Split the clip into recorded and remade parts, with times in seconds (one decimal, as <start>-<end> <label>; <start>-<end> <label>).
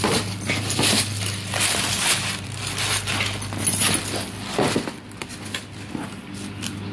0.0-6.9 recorded